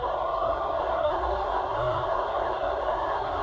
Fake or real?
fake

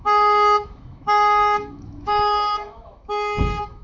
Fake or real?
fake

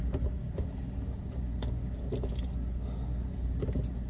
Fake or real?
real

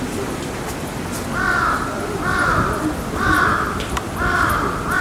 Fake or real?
real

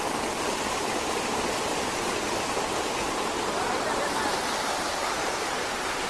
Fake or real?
real